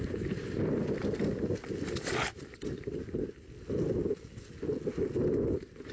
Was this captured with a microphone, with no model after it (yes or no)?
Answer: yes